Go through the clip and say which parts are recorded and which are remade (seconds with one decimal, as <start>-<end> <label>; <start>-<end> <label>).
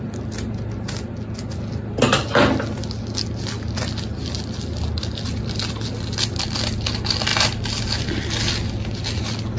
0.0-9.6 recorded